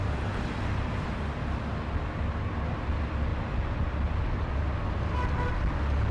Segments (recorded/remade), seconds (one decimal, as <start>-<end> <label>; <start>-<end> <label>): 0.0-6.1 recorded